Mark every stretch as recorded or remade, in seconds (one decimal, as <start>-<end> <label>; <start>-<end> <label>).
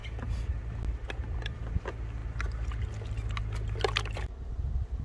0.0-5.0 recorded